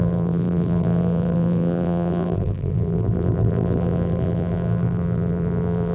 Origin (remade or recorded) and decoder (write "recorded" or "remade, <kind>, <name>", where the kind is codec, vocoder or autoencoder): remade, vocoder, BigVGAN v2